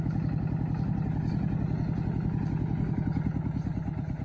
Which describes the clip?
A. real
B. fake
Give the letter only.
A